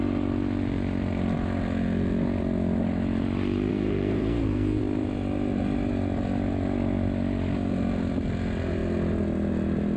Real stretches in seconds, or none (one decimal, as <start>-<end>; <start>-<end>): 0.0-3.7; 4.8-10.0